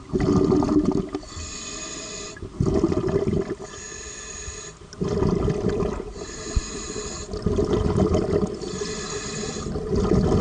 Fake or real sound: real